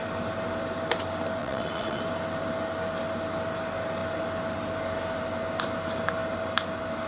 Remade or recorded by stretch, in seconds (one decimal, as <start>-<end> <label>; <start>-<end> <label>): 0.0-1.4 recorded; 1.4-2.0 remade; 2.0-7.1 recorded